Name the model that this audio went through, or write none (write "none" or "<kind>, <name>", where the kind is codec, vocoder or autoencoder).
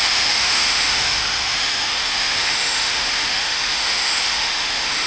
autoencoder, DAC-VAE